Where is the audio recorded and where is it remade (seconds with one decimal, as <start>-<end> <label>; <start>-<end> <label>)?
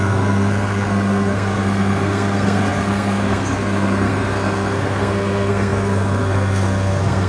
0.0-7.3 remade